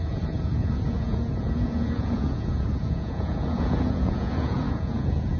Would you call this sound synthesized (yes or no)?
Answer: yes